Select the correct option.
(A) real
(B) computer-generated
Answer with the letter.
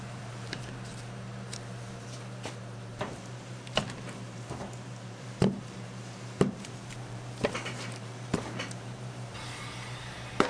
B